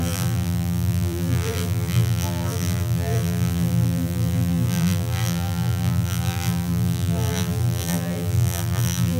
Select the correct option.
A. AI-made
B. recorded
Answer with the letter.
A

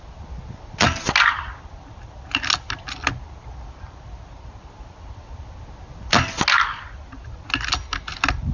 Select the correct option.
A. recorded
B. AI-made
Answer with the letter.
A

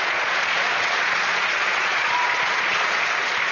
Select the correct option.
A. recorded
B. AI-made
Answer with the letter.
B